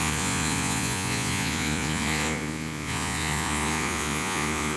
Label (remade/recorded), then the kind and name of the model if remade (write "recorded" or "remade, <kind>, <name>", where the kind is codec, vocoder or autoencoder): remade, vocoder, Vocos